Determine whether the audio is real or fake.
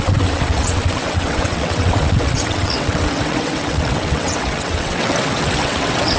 fake